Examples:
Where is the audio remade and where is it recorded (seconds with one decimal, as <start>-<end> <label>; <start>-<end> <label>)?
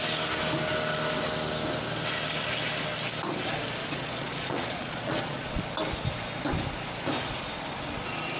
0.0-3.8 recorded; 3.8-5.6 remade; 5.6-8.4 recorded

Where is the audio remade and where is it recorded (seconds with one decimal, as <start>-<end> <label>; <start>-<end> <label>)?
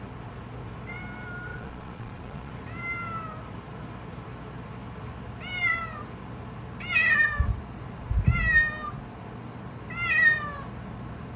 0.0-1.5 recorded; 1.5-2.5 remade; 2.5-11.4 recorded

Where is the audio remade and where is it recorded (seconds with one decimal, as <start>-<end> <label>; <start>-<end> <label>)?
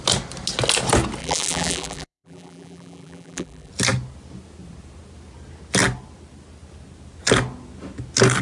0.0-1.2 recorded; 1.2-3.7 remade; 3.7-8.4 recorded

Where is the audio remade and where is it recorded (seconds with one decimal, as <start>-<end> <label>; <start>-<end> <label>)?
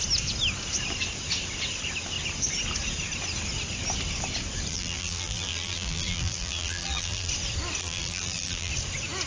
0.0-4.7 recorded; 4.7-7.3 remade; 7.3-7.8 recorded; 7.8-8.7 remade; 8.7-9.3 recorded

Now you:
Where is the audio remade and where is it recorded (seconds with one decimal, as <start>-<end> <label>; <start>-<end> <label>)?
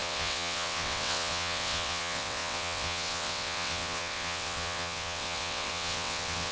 0.0-6.5 remade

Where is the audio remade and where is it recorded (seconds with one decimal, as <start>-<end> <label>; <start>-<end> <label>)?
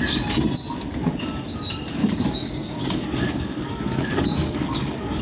0.0-1.9 recorded; 1.9-5.2 remade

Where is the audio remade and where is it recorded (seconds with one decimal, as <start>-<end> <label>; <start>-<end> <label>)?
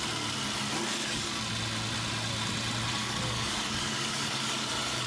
0.0-0.9 recorded; 0.9-1.4 remade; 1.4-3.0 recorded; 3.0-5.1 remade